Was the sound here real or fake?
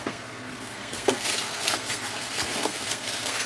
fake